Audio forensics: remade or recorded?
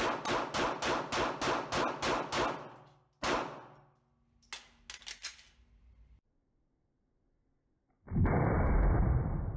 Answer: recorded